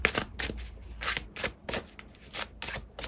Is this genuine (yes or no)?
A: yes